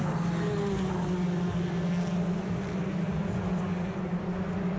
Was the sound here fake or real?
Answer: real